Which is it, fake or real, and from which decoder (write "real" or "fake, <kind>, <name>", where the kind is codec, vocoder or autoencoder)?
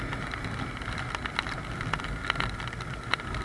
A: real